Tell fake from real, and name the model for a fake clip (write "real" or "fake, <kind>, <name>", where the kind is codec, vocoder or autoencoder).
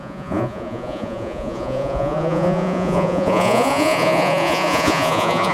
fake, vocoder, Vocos